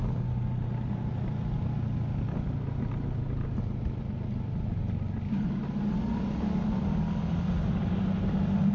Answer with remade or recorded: recorded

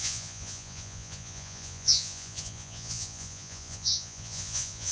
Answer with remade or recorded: remade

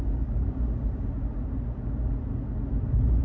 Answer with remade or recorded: recorded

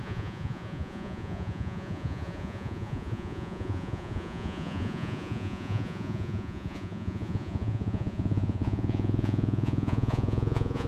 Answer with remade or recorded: remade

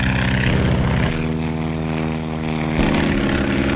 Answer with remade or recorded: recorded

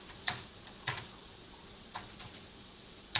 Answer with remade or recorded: remade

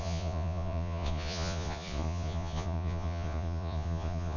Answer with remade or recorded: remade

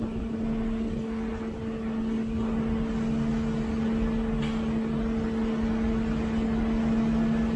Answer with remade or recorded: recorded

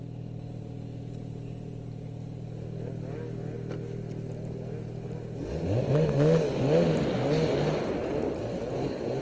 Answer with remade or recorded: recorded